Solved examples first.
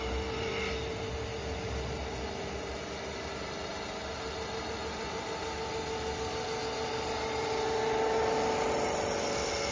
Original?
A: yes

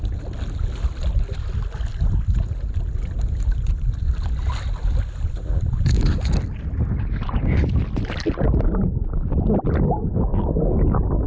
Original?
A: yes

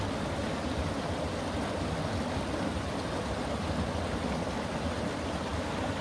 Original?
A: yes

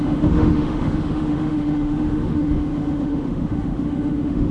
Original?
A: no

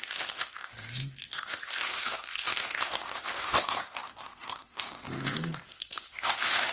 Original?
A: no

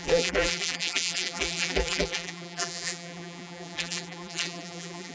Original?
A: no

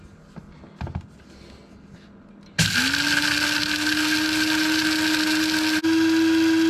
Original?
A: yes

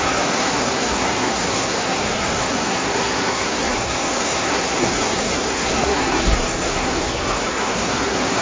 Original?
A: no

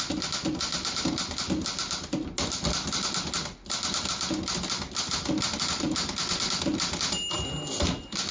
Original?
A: yes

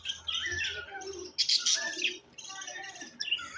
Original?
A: yes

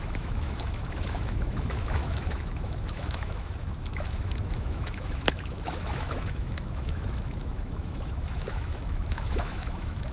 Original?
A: no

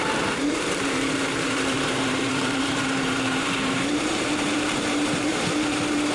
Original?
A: no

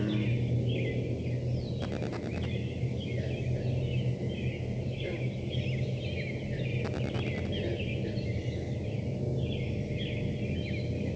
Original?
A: yes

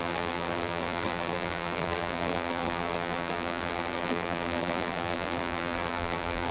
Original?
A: no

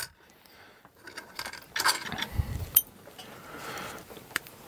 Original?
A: no